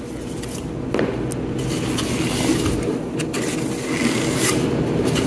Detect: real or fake real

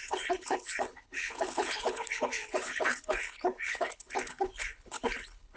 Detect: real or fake fake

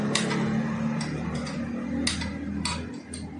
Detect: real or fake real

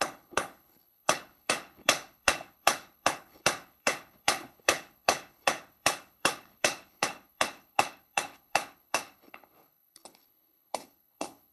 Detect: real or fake fake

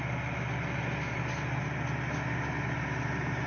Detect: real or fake real